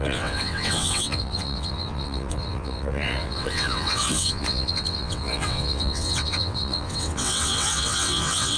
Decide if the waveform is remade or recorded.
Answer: remade